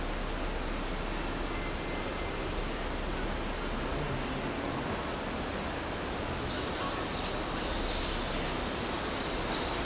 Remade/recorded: recorded